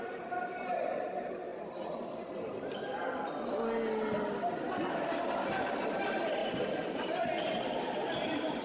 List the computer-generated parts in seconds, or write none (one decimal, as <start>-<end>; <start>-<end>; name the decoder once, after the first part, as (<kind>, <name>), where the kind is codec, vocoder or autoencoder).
0.0-1.5 (vocoder, BigVGAN v2); 4.8-8.6